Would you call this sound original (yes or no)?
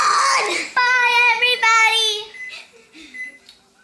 yes